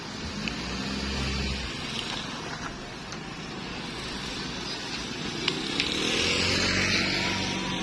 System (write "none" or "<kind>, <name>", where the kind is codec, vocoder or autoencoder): none